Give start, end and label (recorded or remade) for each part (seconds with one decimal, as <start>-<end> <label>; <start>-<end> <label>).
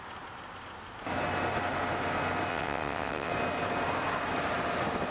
0.0-2.5 recorded; 2.5-3.3 remade; 3.3-5.1 recorded